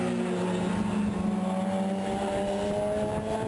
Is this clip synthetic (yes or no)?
no